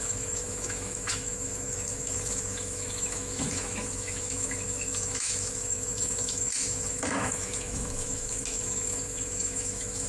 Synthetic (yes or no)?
yes